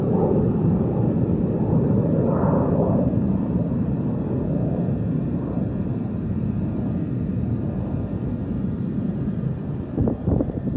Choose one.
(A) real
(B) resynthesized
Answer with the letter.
B